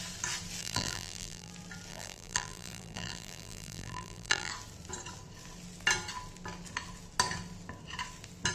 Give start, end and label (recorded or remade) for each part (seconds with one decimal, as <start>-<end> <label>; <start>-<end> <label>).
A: 0.0-0.6 recorded; 0.6-1.5 remade; 1.5-1.9 recorded; 1.9-4.5 remade; 4.5-8.5 recorded